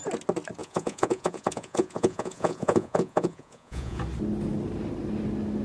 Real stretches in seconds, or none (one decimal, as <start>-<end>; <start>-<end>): 0.0-0.6; 4.0-5.6